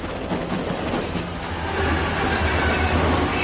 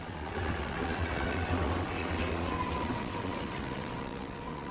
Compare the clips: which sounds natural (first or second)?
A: first